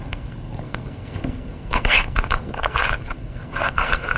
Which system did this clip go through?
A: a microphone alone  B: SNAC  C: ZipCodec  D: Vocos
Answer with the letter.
B